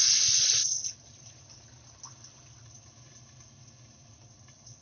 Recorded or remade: recorded